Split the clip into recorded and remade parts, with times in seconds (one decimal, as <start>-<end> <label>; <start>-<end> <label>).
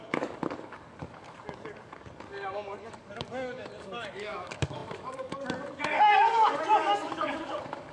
0.0-7.9 remade